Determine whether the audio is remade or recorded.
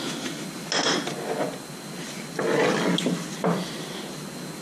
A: recorded